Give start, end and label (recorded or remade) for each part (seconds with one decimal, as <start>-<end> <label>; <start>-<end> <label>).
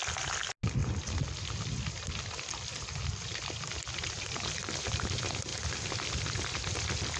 0.0-7.2 recorded